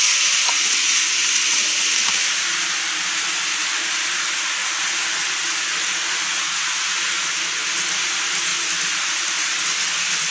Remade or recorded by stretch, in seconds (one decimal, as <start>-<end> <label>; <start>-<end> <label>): 0.0-10.3 recorded